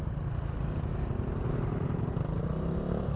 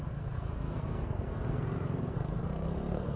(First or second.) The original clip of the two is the first